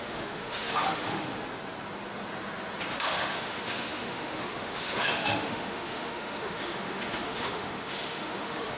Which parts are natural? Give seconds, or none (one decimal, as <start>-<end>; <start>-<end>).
1.3-2.9